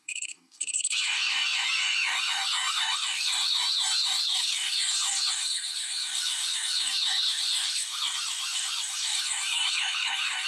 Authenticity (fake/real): fake